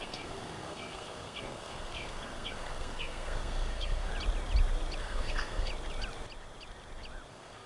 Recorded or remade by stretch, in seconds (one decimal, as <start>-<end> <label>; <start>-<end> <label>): 0.0-4.1 remade; 4.1-5.0 recorded; 5.0-5.7 remade; 5.7-7.3 recorded; 7.3-7.7 remade